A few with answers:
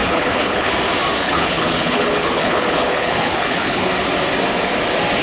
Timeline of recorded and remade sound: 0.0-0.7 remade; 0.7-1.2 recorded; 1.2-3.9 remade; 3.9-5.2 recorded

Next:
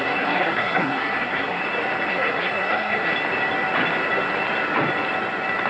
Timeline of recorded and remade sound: 0.0-1.6 remade; 1.6-2.1 recorded; 2.1-3.1 remade; 3.1-5.7 recorded

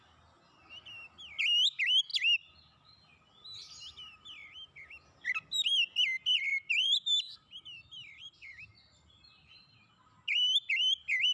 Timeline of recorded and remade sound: 0.0-6.5 recorded; 6.5-9.9 remade; 9.9-11.3 recorded

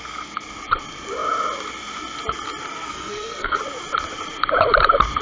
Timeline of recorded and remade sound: 0.0-2.9 recorded; 2.9-3.6 remade; 3.6-5.2 recorded

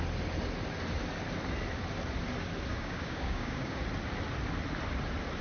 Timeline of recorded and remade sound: 0.0-2.7 recorded; 2.7-3.8 remade; 3.8-5.4 recorded